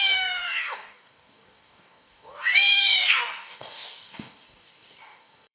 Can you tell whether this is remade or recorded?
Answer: remade